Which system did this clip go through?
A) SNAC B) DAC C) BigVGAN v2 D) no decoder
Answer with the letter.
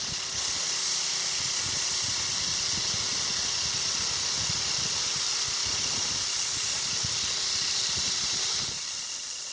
D